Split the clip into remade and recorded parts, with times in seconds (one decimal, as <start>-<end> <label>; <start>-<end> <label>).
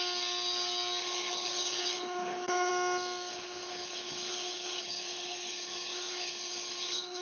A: 0.0-1.0 recorded; 1.0-2.7 remade; 2.7-3.3 recorded; 3.3-7.2 remade